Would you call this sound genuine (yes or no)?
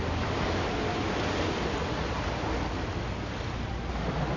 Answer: yes